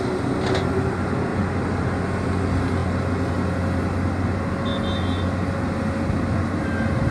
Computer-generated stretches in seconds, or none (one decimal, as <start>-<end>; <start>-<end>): none